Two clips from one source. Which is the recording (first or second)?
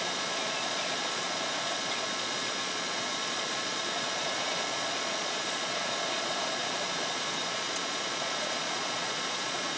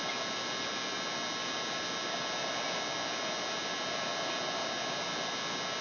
second